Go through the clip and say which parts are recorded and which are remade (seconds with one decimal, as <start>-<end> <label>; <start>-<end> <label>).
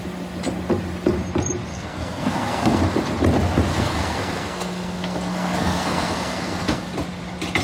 0.0-1.7 recorded; 1.7-2.8 remade; 2.8-3.7 recorded; 3.7-6.9 remade; 6.9-7.6 recorded